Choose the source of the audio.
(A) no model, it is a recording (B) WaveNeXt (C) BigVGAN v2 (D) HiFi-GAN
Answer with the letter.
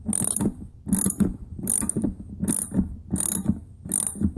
A